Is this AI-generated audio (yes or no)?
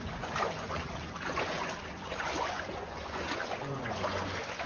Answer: yes